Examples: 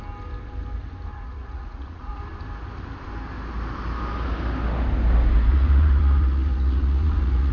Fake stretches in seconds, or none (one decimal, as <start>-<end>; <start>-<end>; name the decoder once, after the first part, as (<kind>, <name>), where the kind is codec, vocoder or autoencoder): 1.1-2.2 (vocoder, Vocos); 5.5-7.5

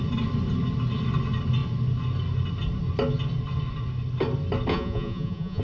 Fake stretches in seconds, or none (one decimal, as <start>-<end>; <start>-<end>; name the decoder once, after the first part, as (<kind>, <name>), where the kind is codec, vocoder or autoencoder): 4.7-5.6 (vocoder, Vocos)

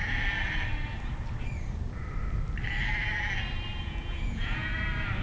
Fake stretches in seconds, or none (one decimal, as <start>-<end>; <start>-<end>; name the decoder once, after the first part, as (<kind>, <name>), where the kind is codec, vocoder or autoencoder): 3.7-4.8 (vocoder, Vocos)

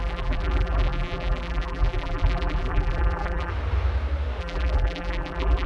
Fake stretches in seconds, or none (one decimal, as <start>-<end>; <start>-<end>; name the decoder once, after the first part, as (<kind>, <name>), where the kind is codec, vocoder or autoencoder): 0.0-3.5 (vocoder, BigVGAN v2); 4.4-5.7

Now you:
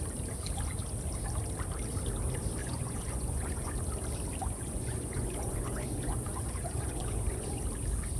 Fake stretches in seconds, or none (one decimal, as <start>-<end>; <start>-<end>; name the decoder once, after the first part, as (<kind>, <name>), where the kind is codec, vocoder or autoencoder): 2.6-3.8 (vocoder, Vocos); 4.4-7.5

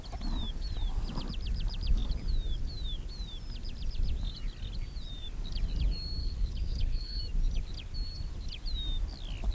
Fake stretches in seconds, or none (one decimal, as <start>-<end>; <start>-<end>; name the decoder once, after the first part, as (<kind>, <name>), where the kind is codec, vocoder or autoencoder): 6.2-7.2 (codec, HILCodec)

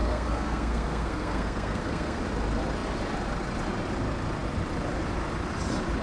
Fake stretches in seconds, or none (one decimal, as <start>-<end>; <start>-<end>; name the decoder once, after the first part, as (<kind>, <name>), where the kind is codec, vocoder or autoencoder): 0.0-2.2 (codec, SNAC)

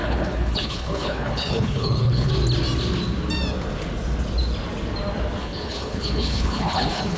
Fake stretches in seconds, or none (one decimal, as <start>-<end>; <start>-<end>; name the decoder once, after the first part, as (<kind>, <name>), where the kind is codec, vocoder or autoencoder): 0.0-2.3 (codec, HILCodec); 5.4-7.2